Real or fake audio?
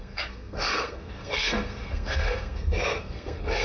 fake